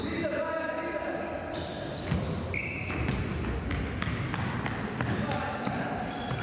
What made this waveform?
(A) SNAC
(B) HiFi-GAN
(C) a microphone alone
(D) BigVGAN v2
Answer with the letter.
C